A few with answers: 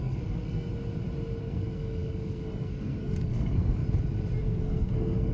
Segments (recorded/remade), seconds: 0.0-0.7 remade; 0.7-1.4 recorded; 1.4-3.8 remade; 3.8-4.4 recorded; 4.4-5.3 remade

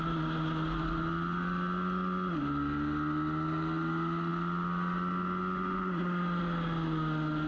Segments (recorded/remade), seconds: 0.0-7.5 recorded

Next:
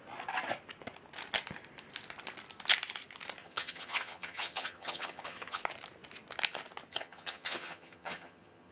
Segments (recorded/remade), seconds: 0.0-3.4 recorded; 3.4-5.6 remade; 5.6-6.9 recorded; 6.9-8.7 remade

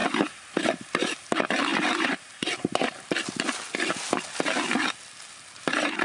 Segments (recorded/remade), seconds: 0.0-6.0 recorded